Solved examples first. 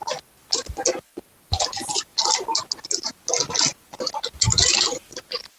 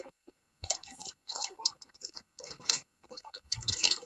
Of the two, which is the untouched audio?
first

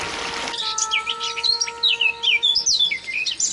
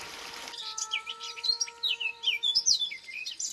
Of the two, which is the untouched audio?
first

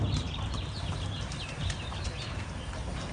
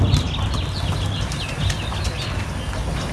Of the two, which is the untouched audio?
second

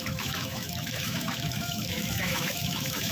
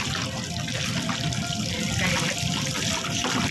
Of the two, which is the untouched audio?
second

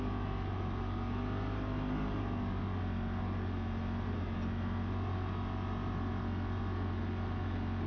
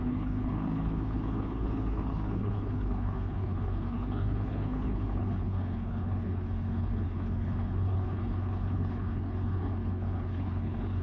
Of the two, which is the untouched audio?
first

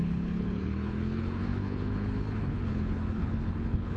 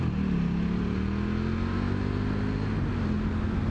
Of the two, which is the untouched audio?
second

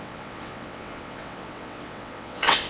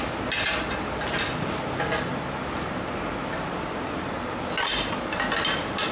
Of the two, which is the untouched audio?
second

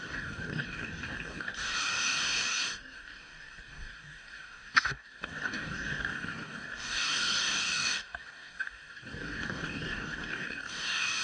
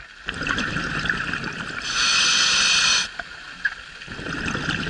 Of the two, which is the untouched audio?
second